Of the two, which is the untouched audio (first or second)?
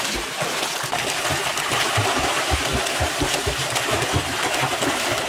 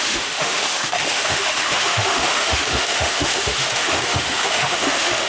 first